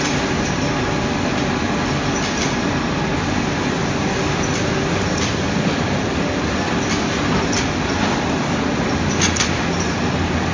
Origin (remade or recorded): recorded